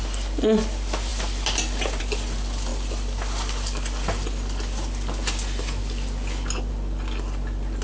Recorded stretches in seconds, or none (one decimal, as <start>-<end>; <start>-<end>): 0.0-7.8